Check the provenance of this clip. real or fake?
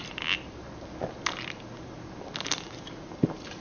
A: real